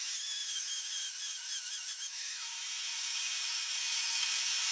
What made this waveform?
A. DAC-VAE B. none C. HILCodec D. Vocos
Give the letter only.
A